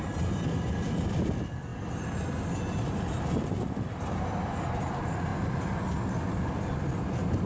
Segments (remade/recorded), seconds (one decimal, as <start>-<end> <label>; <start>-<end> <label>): 0.0-7.5 recorded